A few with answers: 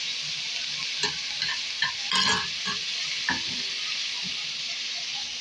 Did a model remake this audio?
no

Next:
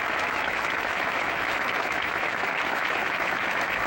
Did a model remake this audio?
yes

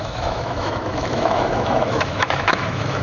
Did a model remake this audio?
yes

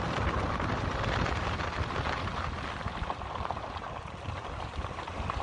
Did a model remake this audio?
no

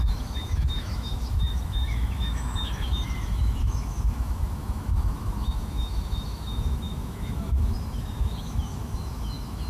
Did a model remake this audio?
yes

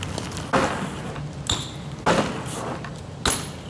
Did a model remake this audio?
no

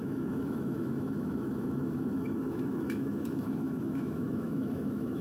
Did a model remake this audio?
yes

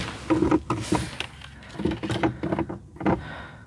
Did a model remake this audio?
no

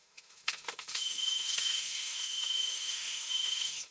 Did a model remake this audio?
yes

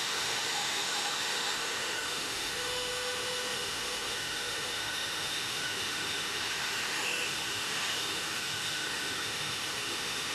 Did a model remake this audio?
yes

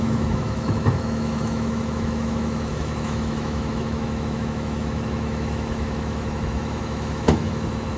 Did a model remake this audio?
yes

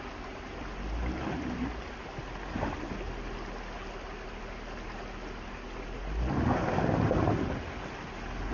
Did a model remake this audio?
no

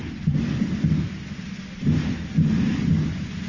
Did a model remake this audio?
no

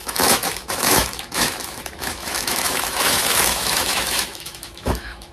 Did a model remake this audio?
yes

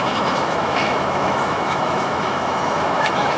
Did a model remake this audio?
yes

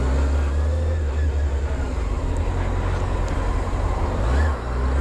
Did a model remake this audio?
no